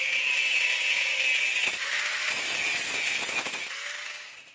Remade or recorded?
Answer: recorded